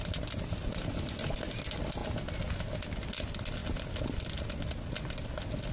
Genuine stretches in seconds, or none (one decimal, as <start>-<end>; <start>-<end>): 0.0-5.7